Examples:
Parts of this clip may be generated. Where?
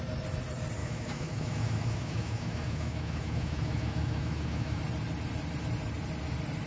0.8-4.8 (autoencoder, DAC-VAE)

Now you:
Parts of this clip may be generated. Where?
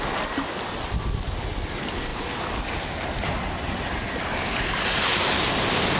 none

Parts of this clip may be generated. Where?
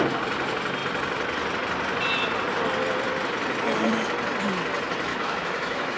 5.1-6.0 (autoencoder, DAC-VAE)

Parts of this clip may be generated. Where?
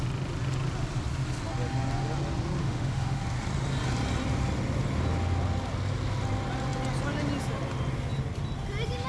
2.6-3.2 (autoencoder, DAC-VAE)